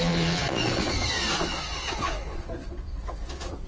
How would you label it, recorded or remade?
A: remade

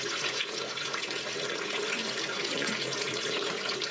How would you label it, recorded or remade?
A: remade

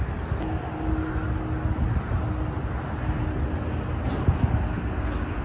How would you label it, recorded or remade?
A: recorded